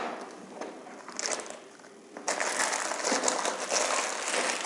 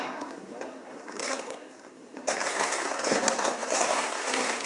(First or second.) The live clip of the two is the first